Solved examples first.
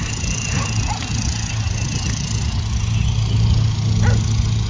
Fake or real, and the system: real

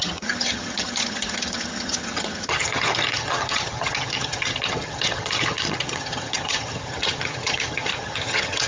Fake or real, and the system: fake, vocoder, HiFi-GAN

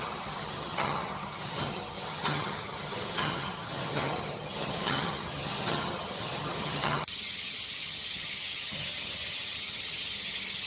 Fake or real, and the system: fake, vocoder, HiFi-GAN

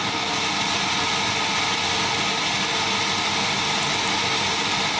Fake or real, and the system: real